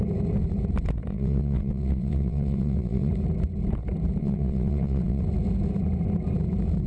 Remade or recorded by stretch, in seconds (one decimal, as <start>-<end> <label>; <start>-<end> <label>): 0.0-1.1 recorded; 1.1-3.1 remade; 3.1-4.2 recorded; 4.2-5.2 remade; 5.2-6.9 recorded